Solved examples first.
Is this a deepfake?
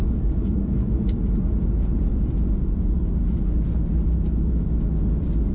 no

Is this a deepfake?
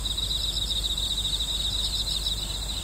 no